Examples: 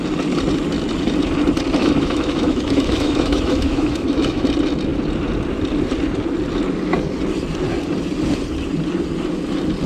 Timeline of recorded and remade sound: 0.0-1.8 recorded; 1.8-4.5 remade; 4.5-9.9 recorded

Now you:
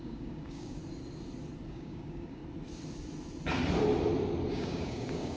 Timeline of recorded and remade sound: 0.0-0.8 remade; 0.8-1.7 recorded; 1.7-2.4 remade; 2.4-4.5 recorded; 4.5-5.4 remade

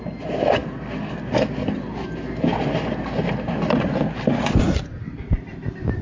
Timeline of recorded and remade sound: 0.0-6.0 recorded

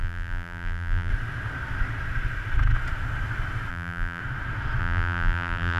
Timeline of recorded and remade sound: 0.0-1.1 remade; 1.1-3.7 recorded; 3.7-4.2 remade; 4.2-4.8 recorded; 4.8-5.8 remade